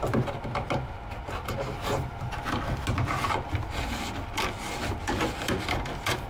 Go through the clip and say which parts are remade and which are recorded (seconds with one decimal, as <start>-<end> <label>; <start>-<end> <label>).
0.0-6.3 recorded